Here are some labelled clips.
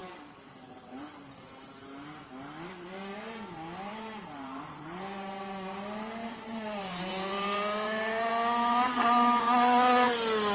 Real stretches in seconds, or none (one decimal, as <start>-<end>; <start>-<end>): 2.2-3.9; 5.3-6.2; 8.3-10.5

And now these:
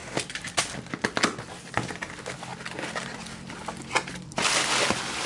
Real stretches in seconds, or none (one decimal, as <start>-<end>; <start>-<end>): 0.6-2.5

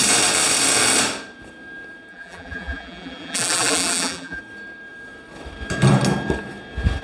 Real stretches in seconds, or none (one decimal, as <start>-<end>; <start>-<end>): 0.0-2.1; 4.4-7.0

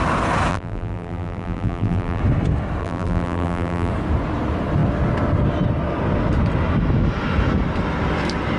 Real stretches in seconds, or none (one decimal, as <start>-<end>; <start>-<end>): 0.0-0.5; 2.2-2.8; 3.9-8.6

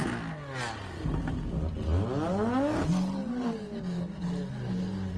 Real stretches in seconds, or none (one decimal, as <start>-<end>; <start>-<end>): 0.0-5.2

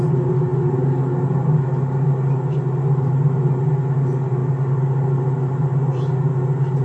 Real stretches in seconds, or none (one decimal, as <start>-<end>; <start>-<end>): 0.0-6.8

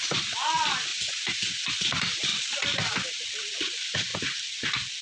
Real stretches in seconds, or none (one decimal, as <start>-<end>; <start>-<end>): 0.9-1.7; 2.3-3.1

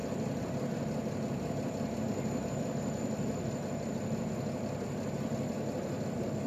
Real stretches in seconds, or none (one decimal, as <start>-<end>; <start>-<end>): 0.0-6.5